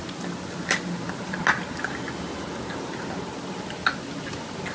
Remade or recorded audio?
recorded